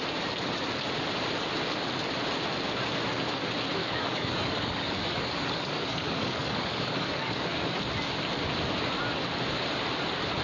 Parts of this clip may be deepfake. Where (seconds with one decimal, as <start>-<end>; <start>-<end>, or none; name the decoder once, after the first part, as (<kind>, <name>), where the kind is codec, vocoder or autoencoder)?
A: 3.8-7.8 (codec, DAC)